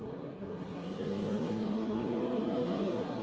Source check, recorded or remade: remade